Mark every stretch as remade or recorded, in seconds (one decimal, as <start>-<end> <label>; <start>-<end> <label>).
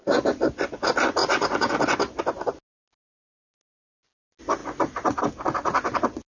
0.0-1.2 recorded; 1.2-1.8 remade; 1.8-6.3 recorded